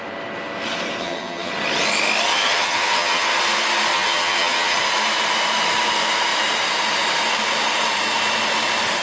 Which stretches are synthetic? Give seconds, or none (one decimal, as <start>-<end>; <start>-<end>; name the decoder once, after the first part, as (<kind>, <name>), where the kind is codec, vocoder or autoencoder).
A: 1.0-1.5 (vocoder, HiFi-GAN); 2.3-3.4; 3.9-4.8

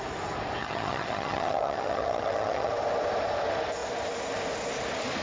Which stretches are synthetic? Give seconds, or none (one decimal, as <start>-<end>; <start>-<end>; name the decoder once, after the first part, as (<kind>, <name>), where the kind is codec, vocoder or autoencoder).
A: 0.6-2.7 (vocoder, HiFi-GAN)

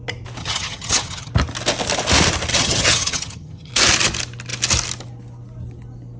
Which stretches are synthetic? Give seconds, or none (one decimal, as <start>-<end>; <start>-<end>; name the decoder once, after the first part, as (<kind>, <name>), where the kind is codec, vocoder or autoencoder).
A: 0.4-1.3 (vocoder, HiFi-GAN); 2.5-3.7

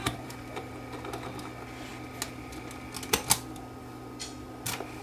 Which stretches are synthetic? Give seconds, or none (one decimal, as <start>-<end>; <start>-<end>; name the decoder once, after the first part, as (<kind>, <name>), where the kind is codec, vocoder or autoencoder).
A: 0.0-0.7 (vocoder, BigVGAN v2)

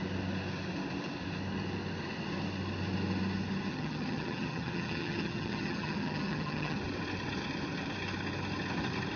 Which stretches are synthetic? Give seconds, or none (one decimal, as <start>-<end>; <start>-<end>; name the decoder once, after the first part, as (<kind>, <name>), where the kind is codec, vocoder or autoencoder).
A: 3.7-6.8 (vocoder, HiFi-GAN)

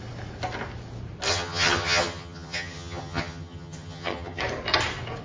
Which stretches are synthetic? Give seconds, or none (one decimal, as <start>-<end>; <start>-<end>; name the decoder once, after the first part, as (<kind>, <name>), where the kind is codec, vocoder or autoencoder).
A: 1.3-4.4 (vocoder, HiFi-GAN)